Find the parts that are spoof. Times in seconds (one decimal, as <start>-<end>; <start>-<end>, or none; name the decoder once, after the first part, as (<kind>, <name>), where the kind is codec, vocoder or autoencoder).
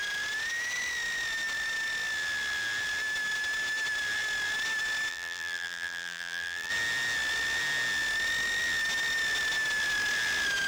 5.1-6.7 (vocoder, BigVGAN v2)